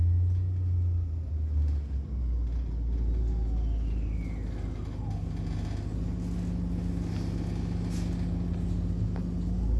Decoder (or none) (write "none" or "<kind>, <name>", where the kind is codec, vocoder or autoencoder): none